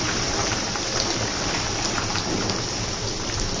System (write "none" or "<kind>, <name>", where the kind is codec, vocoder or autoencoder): vocoder, BigVGAN v2